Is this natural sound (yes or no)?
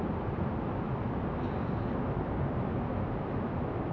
yes